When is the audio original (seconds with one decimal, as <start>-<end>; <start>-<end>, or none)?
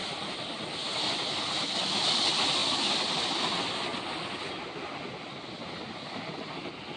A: 0.0-7.0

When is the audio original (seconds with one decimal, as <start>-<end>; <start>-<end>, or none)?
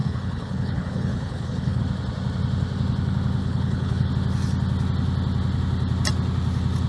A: 1.8-3.4; 4.1-6.9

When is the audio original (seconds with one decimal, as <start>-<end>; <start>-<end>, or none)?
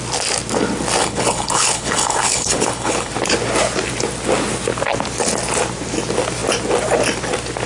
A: 0.0-1.0; 3.1-7.7